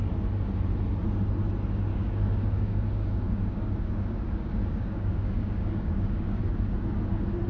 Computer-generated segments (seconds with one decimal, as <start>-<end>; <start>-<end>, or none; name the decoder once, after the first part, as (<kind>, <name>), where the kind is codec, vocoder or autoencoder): 1.9-6.4 (codec, DAC)